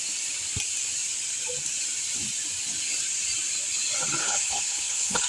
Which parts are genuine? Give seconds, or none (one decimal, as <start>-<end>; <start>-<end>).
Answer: 0.0-4.2